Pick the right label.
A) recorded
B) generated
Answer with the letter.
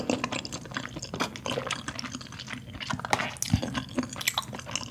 A